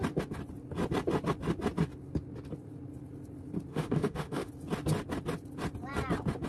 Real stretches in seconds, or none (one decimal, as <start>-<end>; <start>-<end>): 0.0-3.7; 4.5-6.5